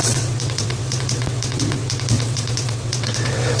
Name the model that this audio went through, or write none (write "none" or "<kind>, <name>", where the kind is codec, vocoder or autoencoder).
vocoder, WaveNeXt